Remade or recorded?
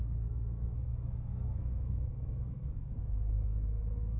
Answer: remade